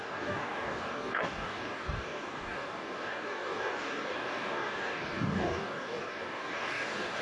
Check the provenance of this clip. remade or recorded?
remade